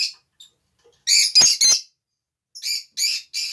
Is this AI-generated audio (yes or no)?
no